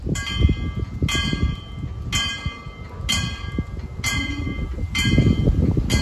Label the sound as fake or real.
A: real